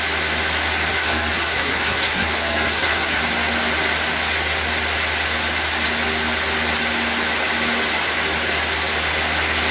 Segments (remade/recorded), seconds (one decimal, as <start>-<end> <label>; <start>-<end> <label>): 0.0-0.9 recorded; 0.9-3.2 remade; 3.2-9.7 recorded